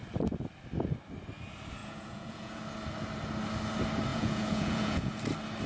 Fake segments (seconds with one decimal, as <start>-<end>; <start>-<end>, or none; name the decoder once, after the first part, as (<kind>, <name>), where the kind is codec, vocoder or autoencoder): 1.8-2.6 (vocoder, Vocos); 4.1-5.2